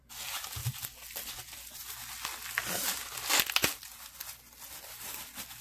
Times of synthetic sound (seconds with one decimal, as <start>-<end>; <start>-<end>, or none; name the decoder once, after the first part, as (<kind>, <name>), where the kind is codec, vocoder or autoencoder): none